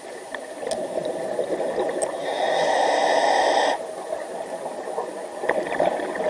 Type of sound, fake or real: real